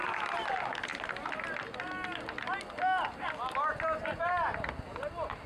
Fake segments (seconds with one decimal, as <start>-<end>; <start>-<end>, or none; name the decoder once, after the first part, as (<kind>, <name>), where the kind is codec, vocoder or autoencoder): none